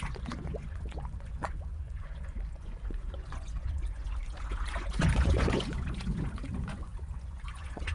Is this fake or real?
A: fake